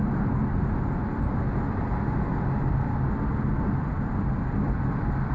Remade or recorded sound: recorded